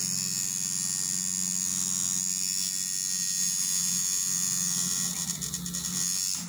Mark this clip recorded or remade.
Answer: recorded